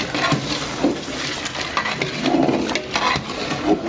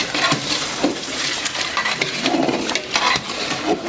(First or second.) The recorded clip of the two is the first